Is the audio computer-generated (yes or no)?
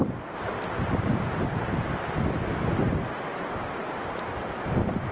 no